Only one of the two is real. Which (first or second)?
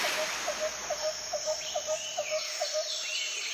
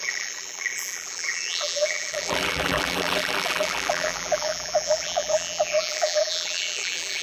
first